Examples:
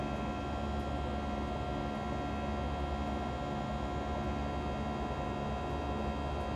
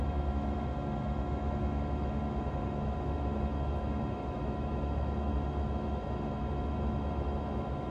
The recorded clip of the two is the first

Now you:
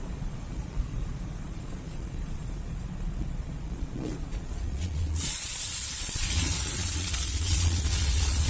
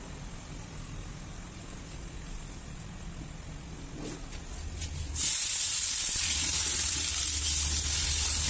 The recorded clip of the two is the second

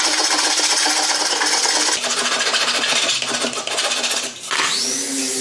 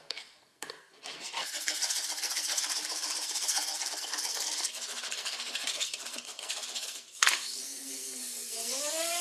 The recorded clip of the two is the first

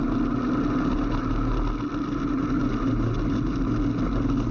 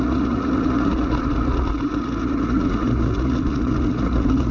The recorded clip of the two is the first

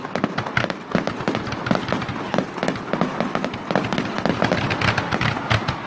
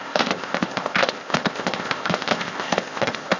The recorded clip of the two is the first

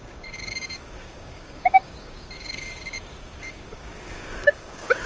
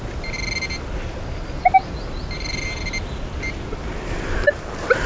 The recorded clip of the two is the second